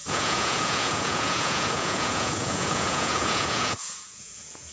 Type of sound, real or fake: fake